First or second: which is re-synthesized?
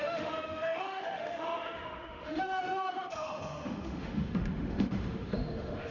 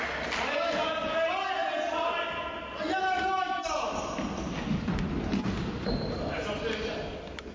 first